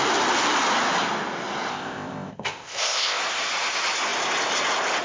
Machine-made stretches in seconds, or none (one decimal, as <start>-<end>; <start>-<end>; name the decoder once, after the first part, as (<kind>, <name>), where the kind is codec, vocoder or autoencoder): 1.7-3.2 (codec, ZipCodec)